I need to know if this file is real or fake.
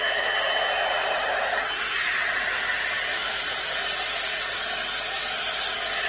real